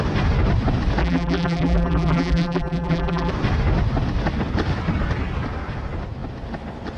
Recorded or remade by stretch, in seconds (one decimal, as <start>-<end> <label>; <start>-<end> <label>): 0.0-1.0 recorded; 1.0-3.3 remade; 3.3-7.0 recorded